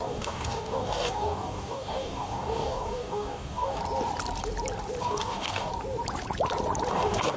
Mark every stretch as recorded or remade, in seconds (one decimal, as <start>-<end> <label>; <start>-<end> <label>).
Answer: 0.0-3.8 remade; 3.8-5.0 recorded; 5.0-5.7 remade; 5.7-6.9 recorded; 6.9-7.4 remade

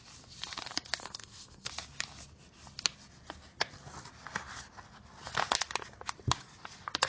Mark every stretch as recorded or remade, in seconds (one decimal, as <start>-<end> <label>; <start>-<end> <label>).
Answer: 0.0-1.0 recorded; 1.0-1.7 remade; 1.7-7.1 recorded

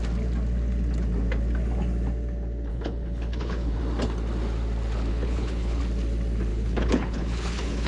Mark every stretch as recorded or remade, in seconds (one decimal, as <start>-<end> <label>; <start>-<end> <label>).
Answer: 0.0-2.7 recorded; 2.7-3.8 remade; 3.8-5.1 recorded; 5.1-5.8 remade; 5.8-6.5 recorded; 6.5-7.9 remade

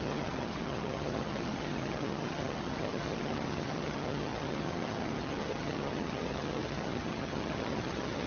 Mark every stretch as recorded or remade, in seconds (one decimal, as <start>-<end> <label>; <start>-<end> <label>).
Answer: 0.0-8.3 remade